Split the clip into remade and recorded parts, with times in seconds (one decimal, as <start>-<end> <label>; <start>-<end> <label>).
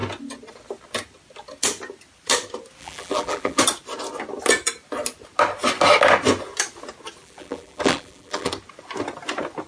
0.0-2.8 recorded; 2.8-3.6 remade; 3.6-7.2 recorded; 7.2-8.5 remade; 8.5-9.7 recorded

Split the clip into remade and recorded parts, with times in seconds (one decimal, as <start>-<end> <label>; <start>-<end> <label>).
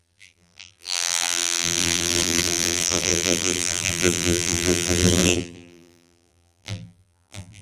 0.0-7.6 remade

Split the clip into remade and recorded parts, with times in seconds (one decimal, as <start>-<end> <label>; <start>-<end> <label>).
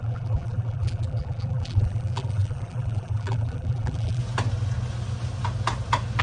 0.0-4.2 remade; 4.2-6.2 recorded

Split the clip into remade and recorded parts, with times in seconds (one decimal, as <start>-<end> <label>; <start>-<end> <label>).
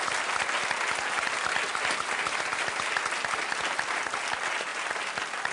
0.0-5.5 recorded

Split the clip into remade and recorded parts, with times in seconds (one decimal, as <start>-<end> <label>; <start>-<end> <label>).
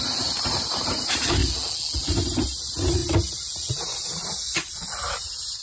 0.0-1.4 remade; 1.4-2.0 recorded; 2.0-3.0 remade; 3.0-3.7 recorded; 3.7-4.4 remade; 4.4-5.1 recorded; 5.1-5.6 remade